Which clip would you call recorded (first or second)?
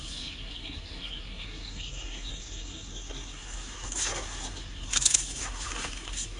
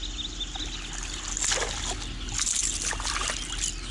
second